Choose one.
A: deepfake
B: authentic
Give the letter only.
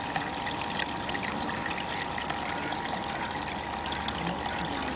B